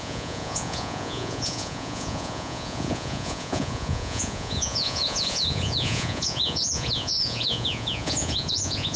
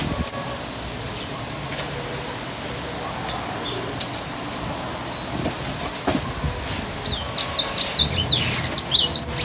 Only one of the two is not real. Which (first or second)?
first